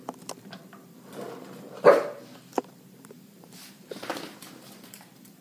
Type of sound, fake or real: fake